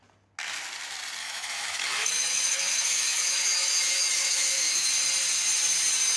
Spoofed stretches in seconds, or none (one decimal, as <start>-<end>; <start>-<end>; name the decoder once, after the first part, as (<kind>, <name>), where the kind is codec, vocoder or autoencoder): 1.2-4.9 (autoencoder, DAC-VAE)